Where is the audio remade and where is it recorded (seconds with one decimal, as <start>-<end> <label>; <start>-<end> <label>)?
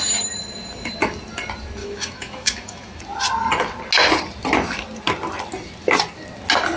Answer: 0.0-1.8 recorded; 1.8-3.0 remade; 3.0-6.8 recorded